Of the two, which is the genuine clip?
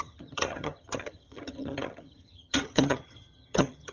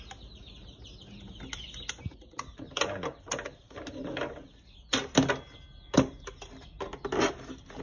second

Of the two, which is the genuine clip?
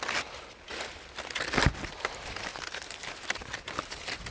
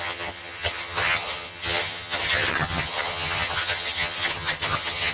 first